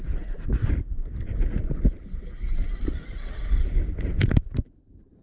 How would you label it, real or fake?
real